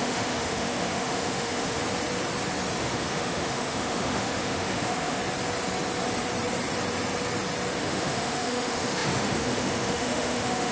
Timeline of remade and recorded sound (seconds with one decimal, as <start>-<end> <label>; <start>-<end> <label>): 0.0-1.8 remade; 1.8-2.8 recorded; 2.8-5.2 remade; 5.2-7.8 recorded; 7.8-10.7 remade